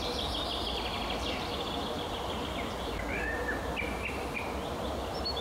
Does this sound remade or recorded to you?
recorded